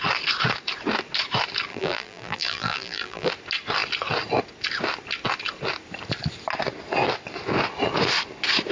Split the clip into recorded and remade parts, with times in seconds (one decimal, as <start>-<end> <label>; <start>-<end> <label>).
0.0-1.7 recorded; 1.7-3.3 remade; 3.3-8.7 recorded